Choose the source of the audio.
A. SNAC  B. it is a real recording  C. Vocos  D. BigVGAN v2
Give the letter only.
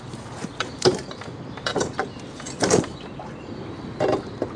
D